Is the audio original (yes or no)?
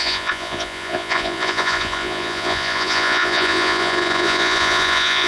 no